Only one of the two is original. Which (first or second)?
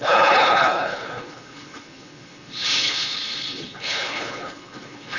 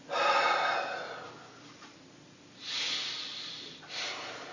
second